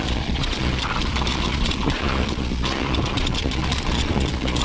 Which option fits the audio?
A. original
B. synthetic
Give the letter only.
B